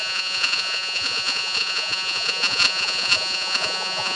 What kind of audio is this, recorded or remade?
remade